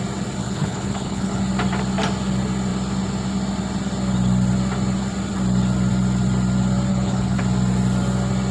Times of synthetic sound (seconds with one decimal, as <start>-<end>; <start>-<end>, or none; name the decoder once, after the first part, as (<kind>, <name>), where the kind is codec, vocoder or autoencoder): 0.4-1.4 (codec, HILCodec); 6.9-7.4

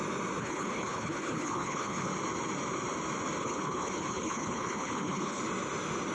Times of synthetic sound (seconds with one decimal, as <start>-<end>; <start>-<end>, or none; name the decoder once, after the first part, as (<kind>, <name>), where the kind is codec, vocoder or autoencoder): 0.4-2.1 (codec, HILCodec); 3.4-5.4

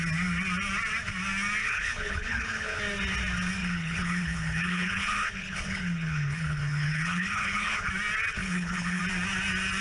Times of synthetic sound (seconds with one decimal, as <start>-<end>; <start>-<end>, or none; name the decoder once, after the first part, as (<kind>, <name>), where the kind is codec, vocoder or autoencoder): 1.6-2.8 (codec, HILCodec); 3.6-7.9; 8.4-9.0

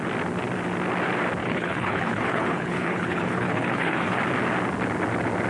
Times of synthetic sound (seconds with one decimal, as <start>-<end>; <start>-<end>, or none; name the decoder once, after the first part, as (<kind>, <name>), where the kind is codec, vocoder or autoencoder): 1.4-4.2 (codec, HILCodec)

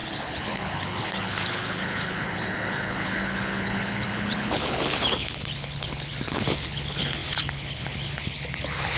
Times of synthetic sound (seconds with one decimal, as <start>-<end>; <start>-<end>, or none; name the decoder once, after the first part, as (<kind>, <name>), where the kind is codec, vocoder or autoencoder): 0.0-9.0 (codec, HILCodec)

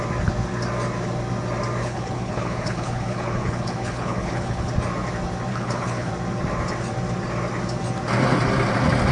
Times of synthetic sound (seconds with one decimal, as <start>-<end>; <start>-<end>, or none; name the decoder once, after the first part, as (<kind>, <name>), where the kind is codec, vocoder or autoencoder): 1.8-4.7 (codec, HILCodec); 5.5-6.1